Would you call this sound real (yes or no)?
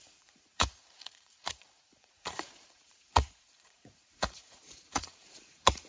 no